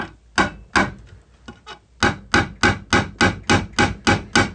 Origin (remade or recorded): recorded